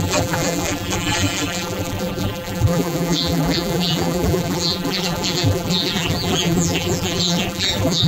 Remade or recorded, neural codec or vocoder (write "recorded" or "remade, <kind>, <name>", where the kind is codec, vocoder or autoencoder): remade, vocoder, BigVGAN v2